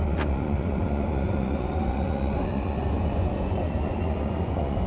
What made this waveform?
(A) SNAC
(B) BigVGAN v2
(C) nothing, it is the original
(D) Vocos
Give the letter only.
D